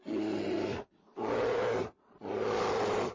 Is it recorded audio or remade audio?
recorded